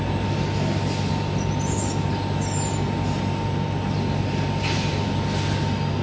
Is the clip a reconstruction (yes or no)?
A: no